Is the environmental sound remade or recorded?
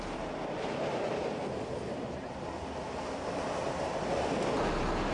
recorded